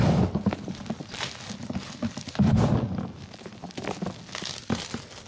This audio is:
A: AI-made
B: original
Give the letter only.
B